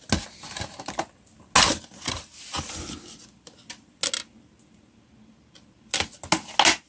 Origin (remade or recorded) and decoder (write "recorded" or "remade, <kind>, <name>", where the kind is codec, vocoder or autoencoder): recorded